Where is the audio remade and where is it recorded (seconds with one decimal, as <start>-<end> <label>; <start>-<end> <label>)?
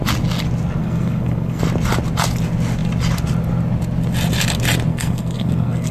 0.0-0.8 recorded; 0.8-1.6 remade; 1.6-4.9 recorded; 4.9-5.9 remade